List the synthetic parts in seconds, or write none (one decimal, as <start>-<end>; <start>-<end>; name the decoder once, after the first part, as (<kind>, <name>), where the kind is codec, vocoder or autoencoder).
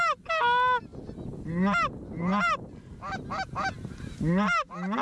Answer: none